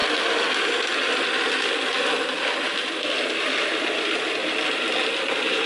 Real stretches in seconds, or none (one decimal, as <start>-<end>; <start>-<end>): 0.0-5.7